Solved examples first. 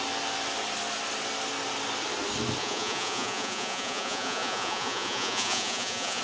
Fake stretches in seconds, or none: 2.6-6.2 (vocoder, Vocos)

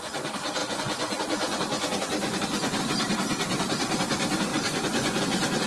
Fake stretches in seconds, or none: 0.6-2.8 (vocoder, Vocos); 4.5-5.2

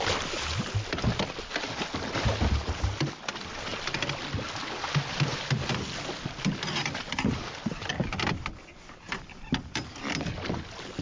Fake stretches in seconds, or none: none